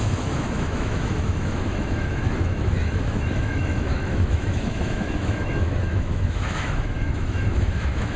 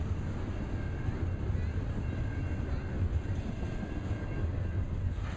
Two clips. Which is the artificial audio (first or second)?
first